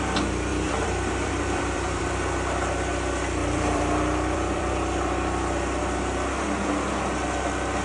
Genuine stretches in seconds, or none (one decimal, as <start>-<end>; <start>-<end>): 0.0-0.5; 2.3-3.4; 4.7-7.8